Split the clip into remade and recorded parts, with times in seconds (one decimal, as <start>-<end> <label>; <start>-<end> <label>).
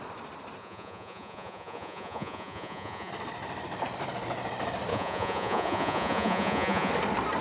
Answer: 0.0-0.6 recorded; 0.6-3.1 remade; 3.1-4.9 recorded; 4.9-6.9 remade; 6.9-7.4 recorded